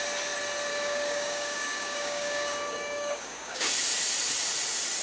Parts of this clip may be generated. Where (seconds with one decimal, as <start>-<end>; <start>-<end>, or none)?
0.7-3.7